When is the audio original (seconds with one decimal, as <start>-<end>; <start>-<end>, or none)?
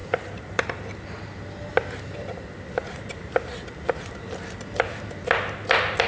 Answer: 0.8-6.1